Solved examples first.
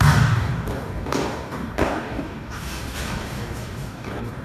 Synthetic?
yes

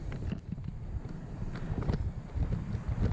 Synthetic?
no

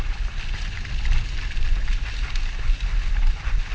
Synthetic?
no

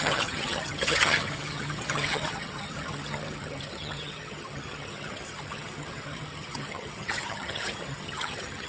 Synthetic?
yes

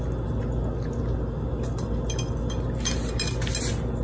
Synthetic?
no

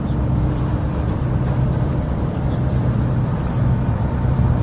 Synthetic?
yes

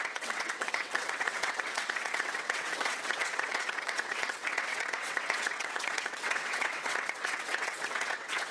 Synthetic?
yes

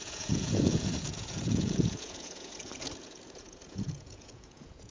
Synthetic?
yes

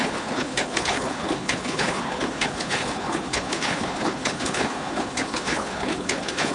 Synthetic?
yes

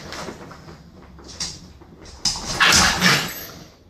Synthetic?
no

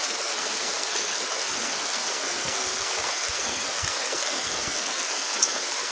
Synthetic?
yes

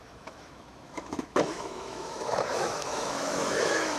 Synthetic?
yes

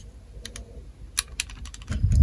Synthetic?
no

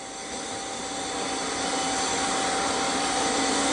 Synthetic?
yes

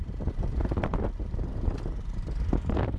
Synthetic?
yes